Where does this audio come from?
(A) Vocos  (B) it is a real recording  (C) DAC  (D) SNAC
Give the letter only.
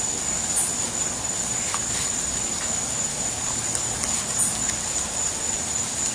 B